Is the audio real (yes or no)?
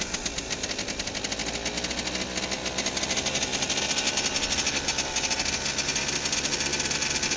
yes